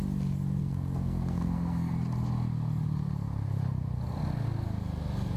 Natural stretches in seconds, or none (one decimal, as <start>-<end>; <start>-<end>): 0.0-0.6; 1.9-5.4